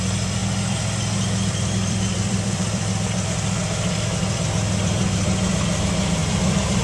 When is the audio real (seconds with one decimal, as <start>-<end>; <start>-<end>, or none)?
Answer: 0.4-1.5

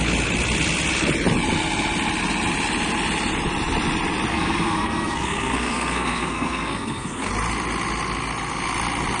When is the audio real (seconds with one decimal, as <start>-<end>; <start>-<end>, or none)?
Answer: 0.0-4.3; 7.3-9.2

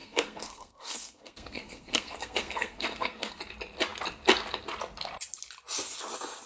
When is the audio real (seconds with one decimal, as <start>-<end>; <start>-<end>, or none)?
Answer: 3.4-6.5

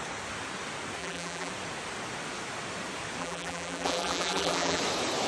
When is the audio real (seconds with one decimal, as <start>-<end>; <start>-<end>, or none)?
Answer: 0.0-1.0; 1.5-3.2; 4.8-5.3

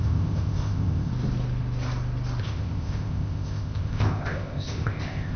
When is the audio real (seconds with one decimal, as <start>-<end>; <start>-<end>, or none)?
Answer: 1.1-2.4

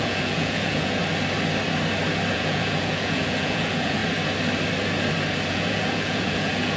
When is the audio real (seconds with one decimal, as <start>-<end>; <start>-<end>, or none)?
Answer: 1.0-2.3; 4.0-5.5